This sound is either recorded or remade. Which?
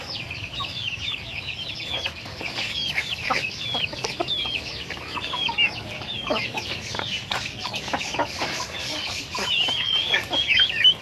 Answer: remade